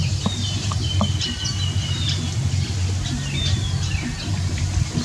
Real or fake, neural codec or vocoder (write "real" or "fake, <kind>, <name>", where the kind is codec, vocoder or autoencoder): real